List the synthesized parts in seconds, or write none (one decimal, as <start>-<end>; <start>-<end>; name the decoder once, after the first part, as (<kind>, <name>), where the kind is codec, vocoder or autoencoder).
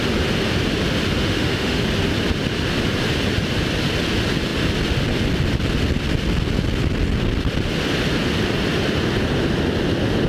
1.2-1.8 (autoencoder, DAC-VAE)